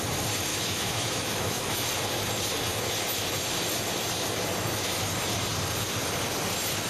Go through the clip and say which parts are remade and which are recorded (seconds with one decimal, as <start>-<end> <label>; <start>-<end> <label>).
0.0-0.5 recorded; 0.5-1.9 remade; 1.9-6.9 recorded